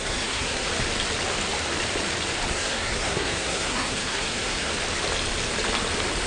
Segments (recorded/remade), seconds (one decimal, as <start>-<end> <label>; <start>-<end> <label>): 0.0-0.7 remade; 0.7-2.5 recorded; 2.5-4.7 remade; 4.7-6.3 recorded